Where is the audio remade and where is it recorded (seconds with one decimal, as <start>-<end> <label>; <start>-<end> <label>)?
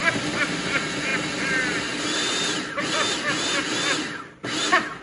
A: 0.0-5.0 recorded